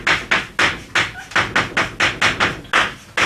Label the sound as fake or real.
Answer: real